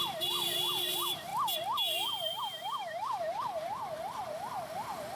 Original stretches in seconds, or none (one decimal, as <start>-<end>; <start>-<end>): 1.3-2.4; 4.2-5.2